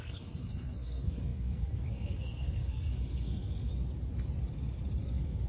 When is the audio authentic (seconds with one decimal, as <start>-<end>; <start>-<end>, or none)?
3.7-5.0